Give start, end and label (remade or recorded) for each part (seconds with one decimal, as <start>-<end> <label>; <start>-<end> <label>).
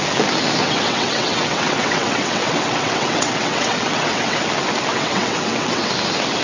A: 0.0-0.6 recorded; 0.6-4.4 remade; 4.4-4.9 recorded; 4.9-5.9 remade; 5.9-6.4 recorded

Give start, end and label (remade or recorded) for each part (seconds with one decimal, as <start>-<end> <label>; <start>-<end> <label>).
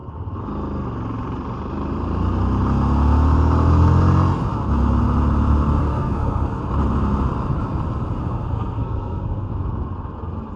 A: 0.0-5.8 recorded; 5.8-6.6 remade; 6.6-8.2 recorded; 8.2-9.5 remade; 9.5-10.6 recorded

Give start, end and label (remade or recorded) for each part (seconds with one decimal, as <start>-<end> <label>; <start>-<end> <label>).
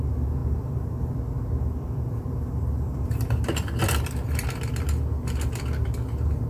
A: 0.0-6.5 recorded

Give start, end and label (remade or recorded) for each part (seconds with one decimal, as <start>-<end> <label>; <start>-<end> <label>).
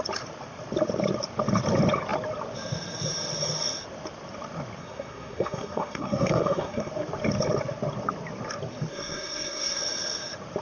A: 0.0-4.8 recorded; 4.8-6.9 remade; 6.9-8.9 recorded; 8.9-9.8 remade; 9.8-10.6 recorded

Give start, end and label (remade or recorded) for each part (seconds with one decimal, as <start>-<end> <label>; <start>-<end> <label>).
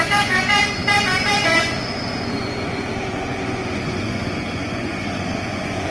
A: 0.0-5.9 remade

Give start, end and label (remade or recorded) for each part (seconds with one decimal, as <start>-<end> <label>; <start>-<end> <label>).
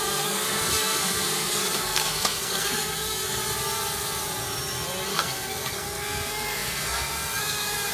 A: 0.0-3.4 remade; 3.4-5.1 recorded; 5.1-7.9 remade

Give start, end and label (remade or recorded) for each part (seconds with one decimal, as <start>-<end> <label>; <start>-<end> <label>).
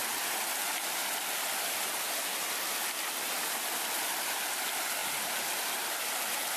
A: 0.0-6.6 recorded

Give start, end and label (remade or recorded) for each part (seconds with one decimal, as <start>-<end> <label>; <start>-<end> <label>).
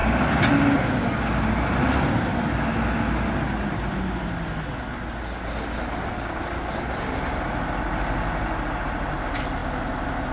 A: 0.0-10.3 recorded